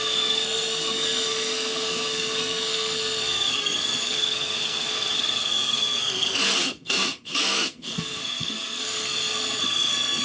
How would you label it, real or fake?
fake